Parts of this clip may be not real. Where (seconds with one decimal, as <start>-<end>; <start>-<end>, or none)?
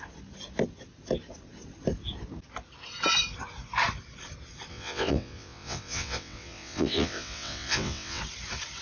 4.7-8.2